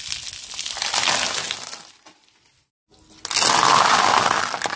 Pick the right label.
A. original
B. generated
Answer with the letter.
A